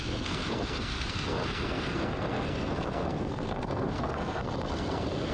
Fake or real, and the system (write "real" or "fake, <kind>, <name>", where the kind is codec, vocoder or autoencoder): fake, codec, SNAC